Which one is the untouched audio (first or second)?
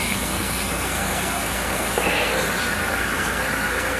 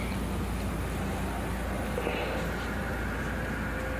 second